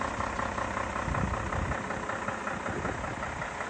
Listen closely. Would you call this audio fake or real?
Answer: real